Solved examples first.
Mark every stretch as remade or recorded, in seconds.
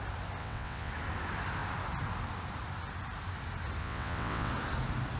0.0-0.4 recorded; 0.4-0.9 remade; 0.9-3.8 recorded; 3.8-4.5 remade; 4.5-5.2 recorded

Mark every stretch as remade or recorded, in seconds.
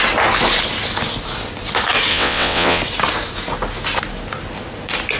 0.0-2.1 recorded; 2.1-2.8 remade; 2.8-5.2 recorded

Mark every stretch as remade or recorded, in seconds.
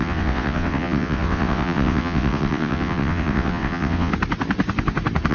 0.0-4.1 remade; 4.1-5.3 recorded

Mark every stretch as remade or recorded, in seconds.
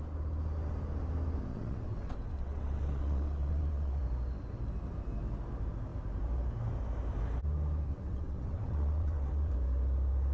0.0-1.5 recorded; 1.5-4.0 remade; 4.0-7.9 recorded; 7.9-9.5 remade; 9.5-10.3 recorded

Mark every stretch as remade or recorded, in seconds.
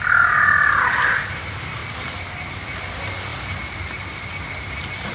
0.0-5.1 recorded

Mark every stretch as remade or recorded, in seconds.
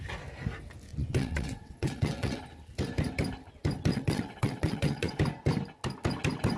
0.0-0.9 recorded; 0.9-2.4 remade; 2.4-3.9 recorded; 3.9-5.2 remade; 5.2-6.6 recorded